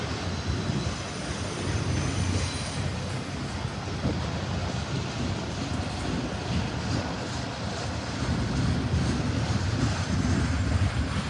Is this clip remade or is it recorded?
recorded